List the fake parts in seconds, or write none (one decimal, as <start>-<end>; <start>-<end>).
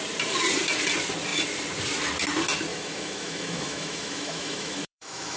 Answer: 2.7-5.4